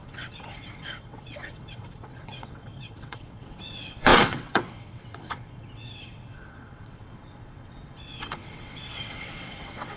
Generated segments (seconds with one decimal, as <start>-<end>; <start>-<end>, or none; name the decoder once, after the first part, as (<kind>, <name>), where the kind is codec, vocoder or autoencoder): 0.0-10.0 (vocoder, WaveNeXt)